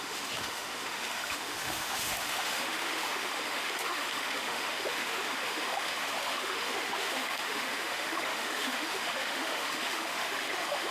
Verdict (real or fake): fake